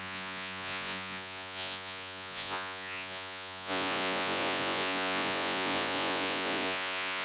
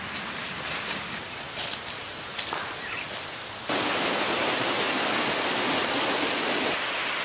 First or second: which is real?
second